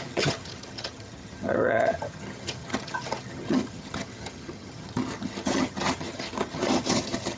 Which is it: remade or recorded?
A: remade